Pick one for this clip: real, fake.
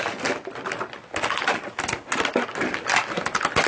real